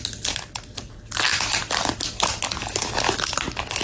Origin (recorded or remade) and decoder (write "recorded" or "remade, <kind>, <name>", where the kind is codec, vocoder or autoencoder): recorded